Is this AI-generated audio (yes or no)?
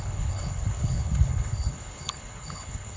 yes